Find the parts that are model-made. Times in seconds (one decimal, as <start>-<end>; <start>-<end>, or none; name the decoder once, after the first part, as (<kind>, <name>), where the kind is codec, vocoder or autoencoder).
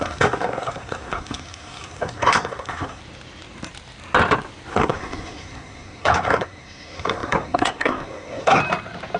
0.0-3.0 (codec, SNAC); 4.7-8.6